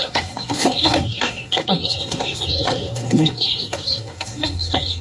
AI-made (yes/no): yes